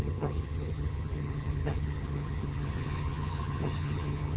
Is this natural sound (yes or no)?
no